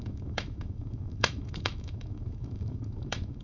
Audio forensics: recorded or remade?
remade